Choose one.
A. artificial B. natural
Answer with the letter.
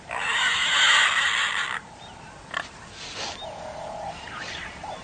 B